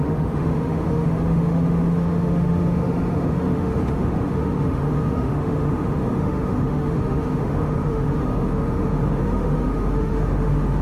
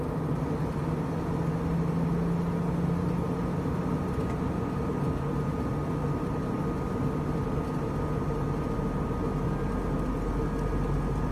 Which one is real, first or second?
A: second